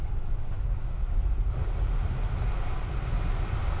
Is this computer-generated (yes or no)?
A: no